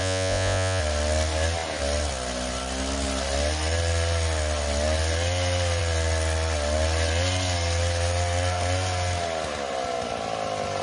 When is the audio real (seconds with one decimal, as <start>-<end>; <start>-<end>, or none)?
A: 0.8-10.8